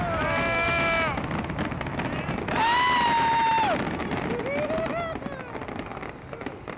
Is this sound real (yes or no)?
yes